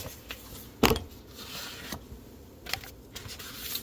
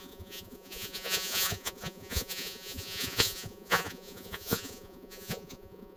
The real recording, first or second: first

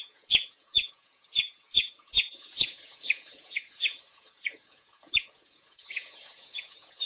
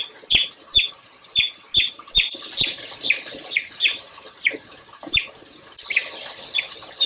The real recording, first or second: second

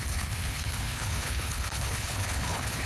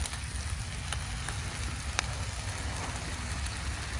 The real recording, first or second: second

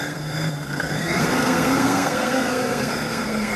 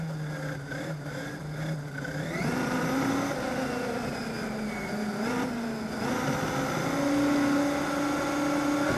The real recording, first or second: second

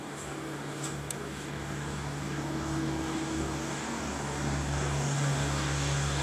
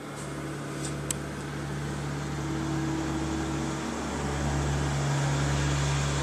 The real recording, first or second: second